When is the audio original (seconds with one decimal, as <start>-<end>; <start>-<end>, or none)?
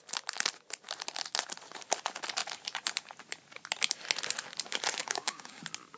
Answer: 0.0-5.0; 5.6-6.0